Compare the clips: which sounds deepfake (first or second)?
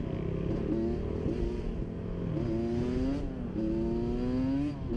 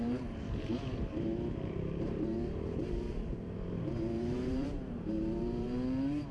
second